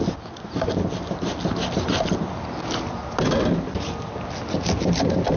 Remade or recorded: recorded